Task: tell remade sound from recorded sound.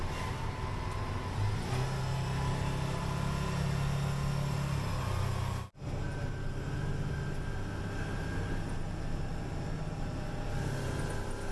recorded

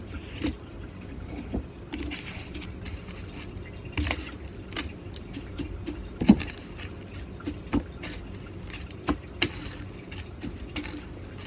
recorded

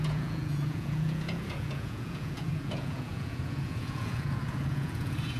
remade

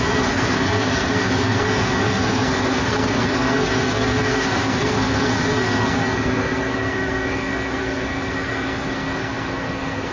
remade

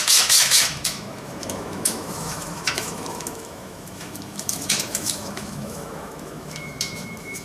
remade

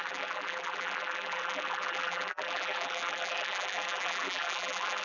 remade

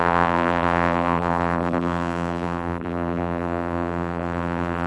remade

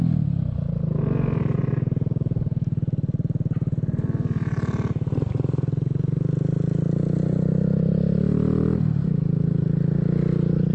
recorded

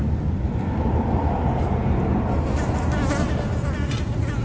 recorded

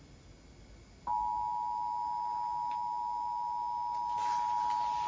recorded